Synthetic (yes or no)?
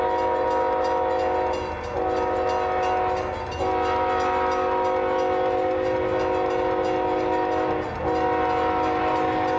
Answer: no